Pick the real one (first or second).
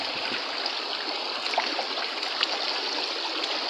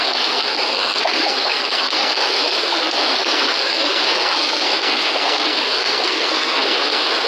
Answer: first